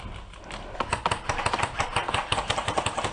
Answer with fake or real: real